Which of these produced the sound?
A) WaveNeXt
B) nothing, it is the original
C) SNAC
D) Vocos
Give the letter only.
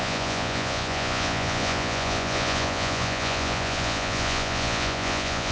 D